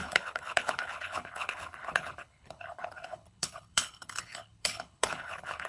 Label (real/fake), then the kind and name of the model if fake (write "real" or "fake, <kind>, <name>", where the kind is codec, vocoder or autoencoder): fake, codec, HILCodec